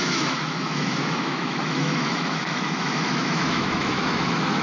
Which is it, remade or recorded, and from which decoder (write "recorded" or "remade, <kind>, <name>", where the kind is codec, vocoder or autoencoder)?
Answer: remade, autoencoder, DAC-VAE